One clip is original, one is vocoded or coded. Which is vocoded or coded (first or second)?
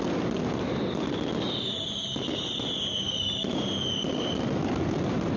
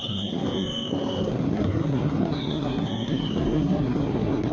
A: second